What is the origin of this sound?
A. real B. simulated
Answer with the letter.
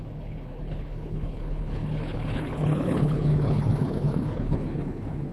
B